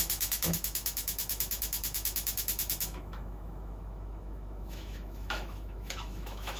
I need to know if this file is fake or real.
fake